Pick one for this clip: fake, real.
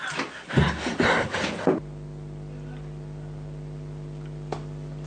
real